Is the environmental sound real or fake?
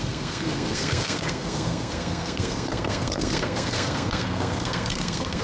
fake